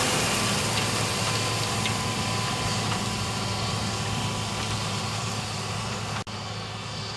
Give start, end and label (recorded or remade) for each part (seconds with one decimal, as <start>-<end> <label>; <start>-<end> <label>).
0.0-7.2 recorded